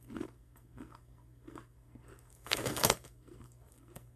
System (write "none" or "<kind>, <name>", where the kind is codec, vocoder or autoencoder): codec, SNAC